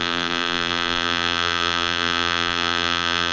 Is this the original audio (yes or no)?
no